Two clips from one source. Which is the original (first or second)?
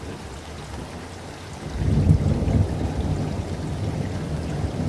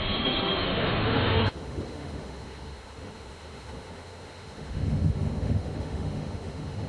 first